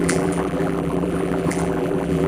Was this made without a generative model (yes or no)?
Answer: no